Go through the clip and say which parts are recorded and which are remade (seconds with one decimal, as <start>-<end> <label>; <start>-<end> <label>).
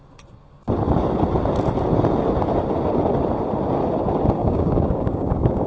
0.0-4.4 recorded; 4.4-5.7 remade